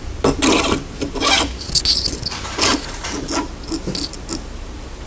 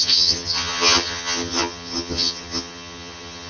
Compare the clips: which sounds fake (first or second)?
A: second